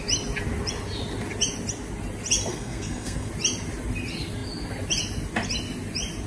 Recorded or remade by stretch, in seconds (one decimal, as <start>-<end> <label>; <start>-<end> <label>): 0.0-2.5 recorded; 2.5-3.3 remade; 3.3-6.3 recorded